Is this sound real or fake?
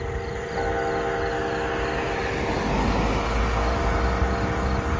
real